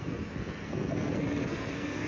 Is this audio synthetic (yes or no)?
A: yes